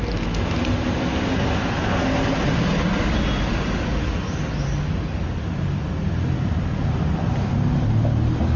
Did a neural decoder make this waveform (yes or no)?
no